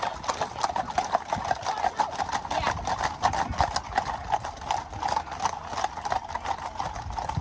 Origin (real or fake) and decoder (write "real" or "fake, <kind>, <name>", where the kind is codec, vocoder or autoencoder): real